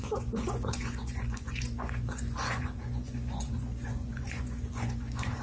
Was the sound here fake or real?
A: fake